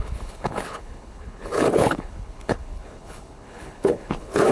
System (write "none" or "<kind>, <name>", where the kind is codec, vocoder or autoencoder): codec, HILCodec